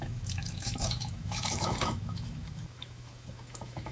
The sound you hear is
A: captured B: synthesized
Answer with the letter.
B